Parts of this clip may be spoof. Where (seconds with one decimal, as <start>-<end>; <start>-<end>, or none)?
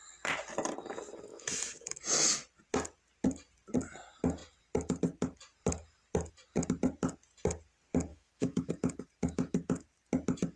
1.3-2.0; 8.1-8.7